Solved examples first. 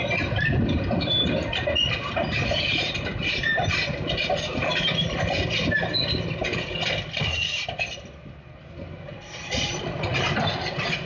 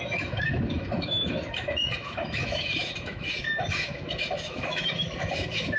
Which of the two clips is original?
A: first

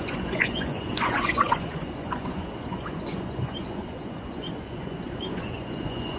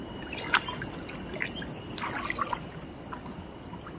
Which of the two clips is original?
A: second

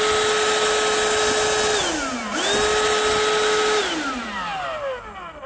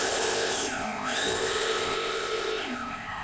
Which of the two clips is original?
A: first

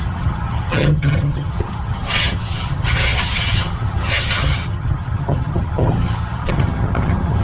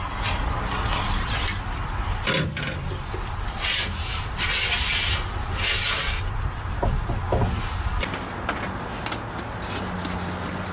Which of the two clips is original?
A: second